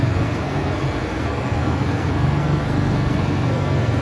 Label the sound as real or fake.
fake